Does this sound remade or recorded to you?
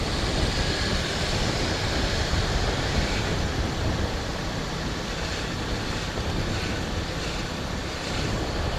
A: recorded